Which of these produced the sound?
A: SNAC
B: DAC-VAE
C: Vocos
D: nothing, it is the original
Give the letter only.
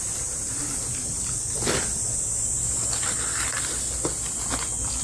D